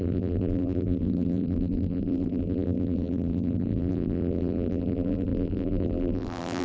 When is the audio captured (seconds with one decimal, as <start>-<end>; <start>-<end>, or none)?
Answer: none